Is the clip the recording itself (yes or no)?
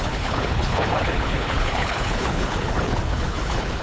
no